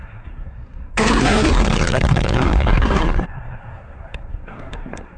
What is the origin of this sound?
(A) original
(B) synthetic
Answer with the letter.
B